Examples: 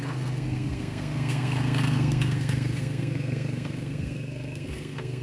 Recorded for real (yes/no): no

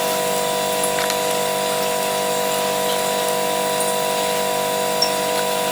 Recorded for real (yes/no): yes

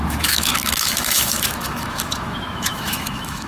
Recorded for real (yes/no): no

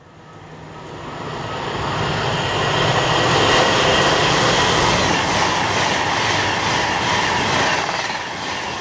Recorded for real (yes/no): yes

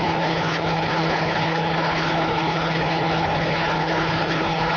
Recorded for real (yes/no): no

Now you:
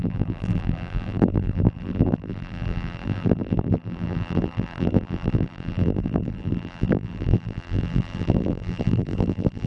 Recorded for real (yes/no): no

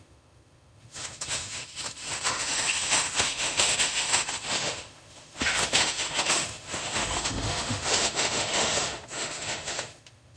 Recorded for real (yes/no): no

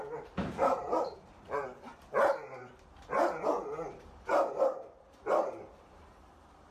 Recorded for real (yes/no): no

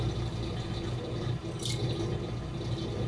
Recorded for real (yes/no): yes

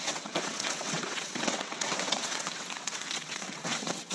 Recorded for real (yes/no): no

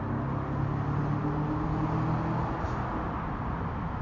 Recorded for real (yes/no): yes